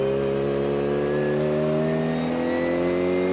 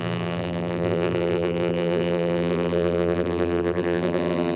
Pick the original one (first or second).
first